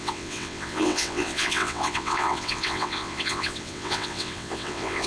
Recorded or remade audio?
remade